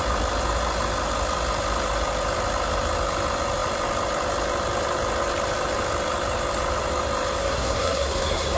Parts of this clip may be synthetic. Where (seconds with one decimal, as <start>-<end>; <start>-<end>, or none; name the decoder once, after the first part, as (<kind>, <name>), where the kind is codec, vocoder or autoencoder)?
7.4-8.6 (codec, SNAC)